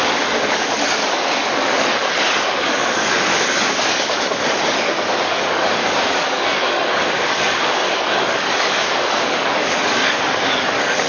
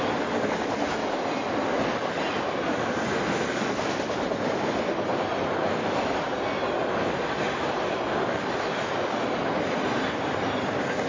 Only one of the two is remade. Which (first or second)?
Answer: first